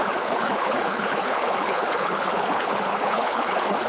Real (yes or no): no